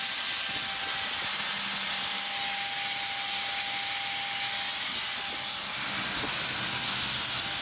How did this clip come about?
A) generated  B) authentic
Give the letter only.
B